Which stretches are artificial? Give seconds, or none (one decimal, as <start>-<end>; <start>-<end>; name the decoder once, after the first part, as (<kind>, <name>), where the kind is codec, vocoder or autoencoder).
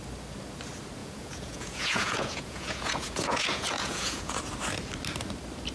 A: 1.0-4.4 (vocoder, Vocos)